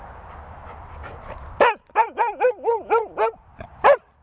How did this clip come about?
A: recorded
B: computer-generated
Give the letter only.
A